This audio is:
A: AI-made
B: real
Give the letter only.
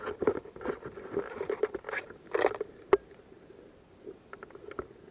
B